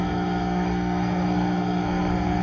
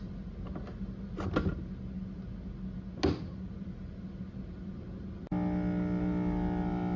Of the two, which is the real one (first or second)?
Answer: second